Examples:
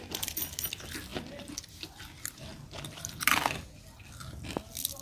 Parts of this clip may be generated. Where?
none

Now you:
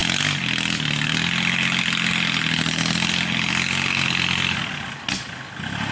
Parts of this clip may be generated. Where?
none

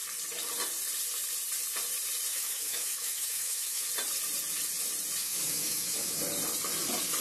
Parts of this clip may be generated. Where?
2.3-3.9 (autoencoder, DAC-VAE); 5.2-6.2

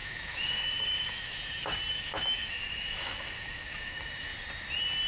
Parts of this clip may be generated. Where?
0.0-1.4 (autoencoder, DAC-VAE); 1.9-4.3